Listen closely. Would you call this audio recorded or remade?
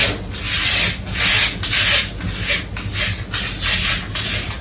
recorded